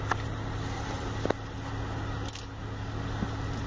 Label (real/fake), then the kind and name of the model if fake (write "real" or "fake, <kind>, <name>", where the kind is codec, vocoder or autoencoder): real